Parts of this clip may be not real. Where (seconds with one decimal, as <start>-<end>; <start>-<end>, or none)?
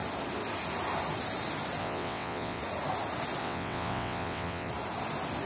1.8-2.6; 3.4-4.7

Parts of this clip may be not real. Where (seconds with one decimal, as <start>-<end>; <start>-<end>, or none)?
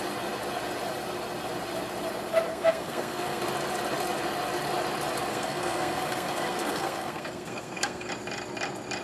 2.5-3.4; 5.3-8.1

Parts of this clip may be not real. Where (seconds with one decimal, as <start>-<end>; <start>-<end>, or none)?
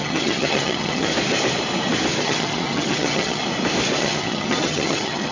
0.0-1.1; 2.2-3.4; 4.0-5.3